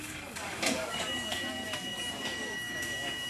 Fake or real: fake